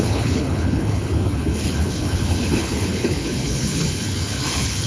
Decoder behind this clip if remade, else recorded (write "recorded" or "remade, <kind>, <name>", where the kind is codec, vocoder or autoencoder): remade, codec, HILCodec